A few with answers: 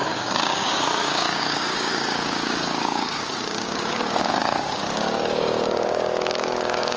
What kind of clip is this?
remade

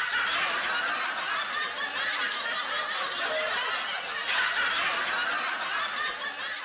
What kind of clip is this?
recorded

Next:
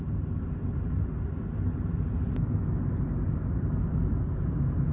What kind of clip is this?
recorded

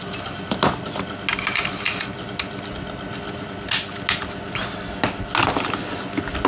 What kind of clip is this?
recorded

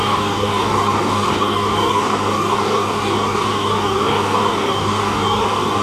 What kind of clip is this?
remade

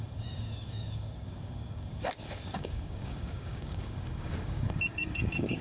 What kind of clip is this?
remade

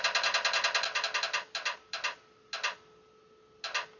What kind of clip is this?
recorded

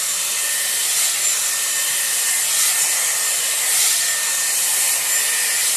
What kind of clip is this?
recorded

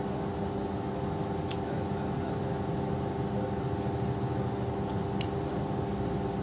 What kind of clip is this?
recorded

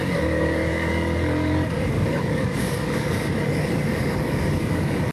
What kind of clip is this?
remade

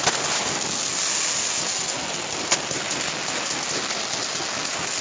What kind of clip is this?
recorded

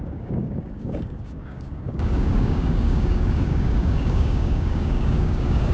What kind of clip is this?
remade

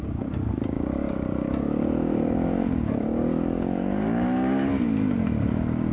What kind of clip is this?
remade